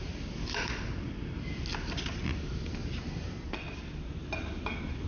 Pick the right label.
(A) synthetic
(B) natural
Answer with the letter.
B